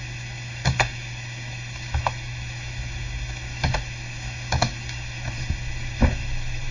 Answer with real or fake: fake